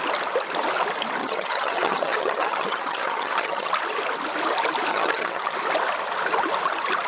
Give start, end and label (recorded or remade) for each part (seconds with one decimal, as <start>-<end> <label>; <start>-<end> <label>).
0.0-1.2 recorded; 1.2-3.7 remade; 3.7-4.9 recorded; 4.9-5.5 remade; 5.5-7.1 recorded